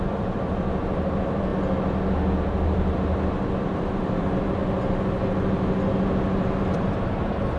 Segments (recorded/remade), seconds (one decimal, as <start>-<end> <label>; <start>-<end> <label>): 0.0-1.5 remade; 1.5-2.4 recorded; 2.4-4.6 remade; 4.6-6.7 recorded; 6.7-7.6 remade